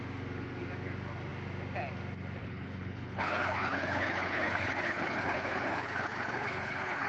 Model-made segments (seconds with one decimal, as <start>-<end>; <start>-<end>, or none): 2.4-7.1